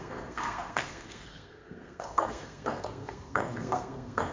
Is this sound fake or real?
fake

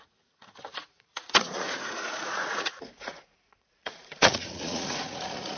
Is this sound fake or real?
fake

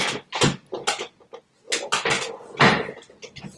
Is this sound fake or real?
real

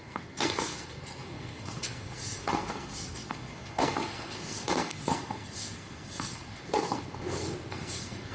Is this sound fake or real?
fake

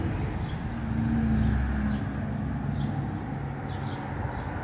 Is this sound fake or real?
real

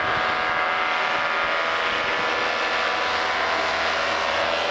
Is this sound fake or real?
real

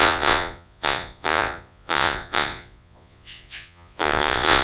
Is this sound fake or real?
fake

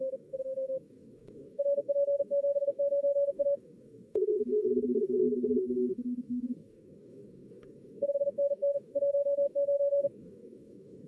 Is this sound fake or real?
fake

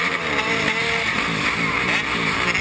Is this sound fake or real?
real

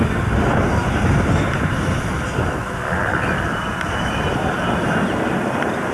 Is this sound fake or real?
real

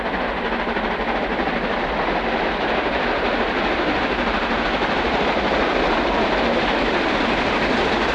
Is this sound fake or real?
real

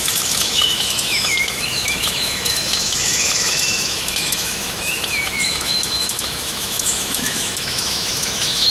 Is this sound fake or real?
fake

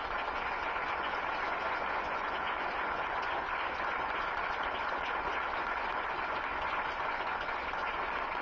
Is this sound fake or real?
fake